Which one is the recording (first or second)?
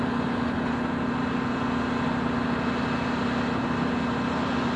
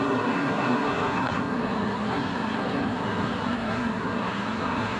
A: first